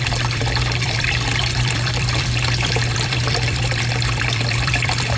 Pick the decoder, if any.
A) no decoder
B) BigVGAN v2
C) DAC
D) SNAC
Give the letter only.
B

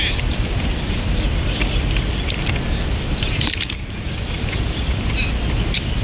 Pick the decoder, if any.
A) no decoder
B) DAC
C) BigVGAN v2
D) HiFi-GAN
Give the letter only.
C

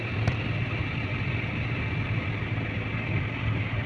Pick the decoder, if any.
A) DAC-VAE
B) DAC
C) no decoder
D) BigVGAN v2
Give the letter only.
D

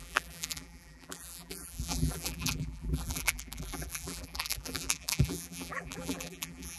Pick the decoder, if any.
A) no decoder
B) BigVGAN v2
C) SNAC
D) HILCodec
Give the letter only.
B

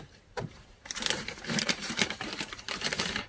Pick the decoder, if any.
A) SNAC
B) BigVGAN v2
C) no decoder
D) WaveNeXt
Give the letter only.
B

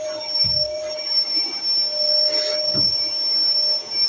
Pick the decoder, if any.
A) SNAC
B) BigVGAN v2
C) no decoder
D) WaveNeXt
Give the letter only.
B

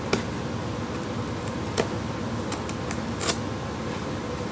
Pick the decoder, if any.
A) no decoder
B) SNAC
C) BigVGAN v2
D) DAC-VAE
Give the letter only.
A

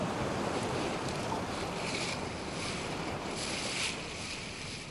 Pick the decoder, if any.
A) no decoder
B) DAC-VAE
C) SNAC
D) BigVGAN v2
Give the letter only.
D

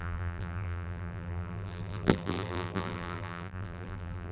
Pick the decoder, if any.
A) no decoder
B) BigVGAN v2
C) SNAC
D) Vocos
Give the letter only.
B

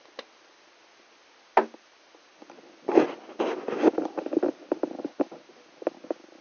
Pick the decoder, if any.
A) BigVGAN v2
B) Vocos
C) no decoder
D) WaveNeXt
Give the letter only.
C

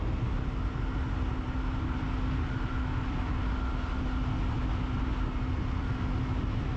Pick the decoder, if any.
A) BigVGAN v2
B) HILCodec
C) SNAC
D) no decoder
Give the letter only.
D